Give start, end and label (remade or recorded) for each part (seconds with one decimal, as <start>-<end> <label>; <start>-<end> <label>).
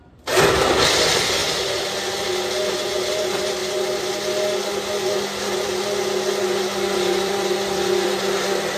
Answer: 0.0-1.4 remade; 1.4-3.1 recorded; 3.1-3.6 remade; 3.6-6.9 recorded; 6.9-8.8 remade